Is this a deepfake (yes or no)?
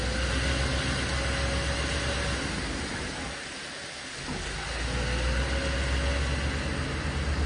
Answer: no